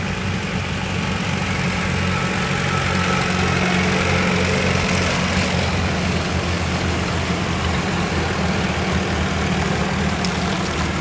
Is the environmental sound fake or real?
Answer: real